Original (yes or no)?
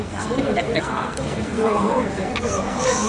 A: no